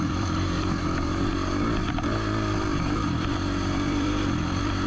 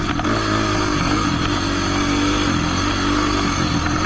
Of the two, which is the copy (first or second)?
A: first